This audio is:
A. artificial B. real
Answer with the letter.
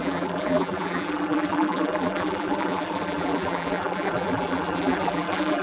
A